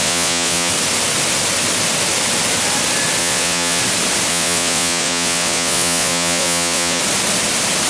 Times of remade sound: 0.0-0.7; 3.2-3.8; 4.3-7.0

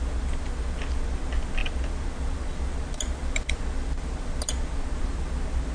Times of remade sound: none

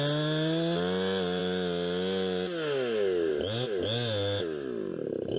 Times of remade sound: none